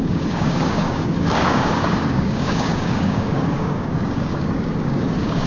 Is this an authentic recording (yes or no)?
no